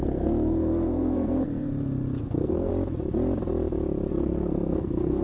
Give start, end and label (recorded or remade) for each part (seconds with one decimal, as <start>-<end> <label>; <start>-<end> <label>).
0.0-1.7 remade; 1.7-2.2 recorded; 2.2-2.7 remade; 2.7-4.1 recorded; 4.1-5.2 remade